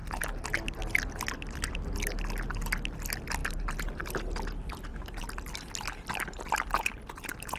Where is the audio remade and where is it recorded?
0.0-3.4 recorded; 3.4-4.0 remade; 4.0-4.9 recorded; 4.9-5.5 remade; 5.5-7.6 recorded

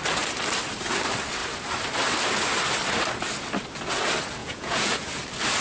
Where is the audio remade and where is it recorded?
0.0-4.4 recorded; 4.4-5.1 remade; 5.1-5.6 recorded

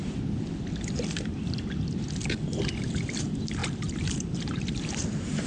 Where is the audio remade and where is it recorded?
0.0-2.8 recorded; 2.8-5.5 remade

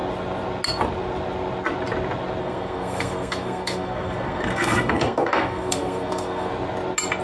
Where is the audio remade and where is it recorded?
0.0-2.4 recorded; 2.4-6.5 remade; 6.5-7.2 recorded

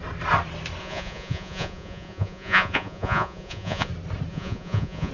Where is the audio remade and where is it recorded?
0.0-0.8 recorded; 0.8-3.9 remade; 3.9-4.3 recorded; 4.3-5.1 remade